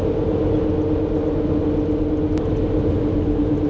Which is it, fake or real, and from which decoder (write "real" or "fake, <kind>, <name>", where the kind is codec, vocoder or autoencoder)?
real